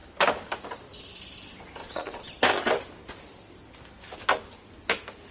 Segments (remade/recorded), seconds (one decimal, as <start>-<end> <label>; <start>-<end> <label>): 0.0-1.8 recorded; 1.8-2.4 remade; 2.4-5.3 recorded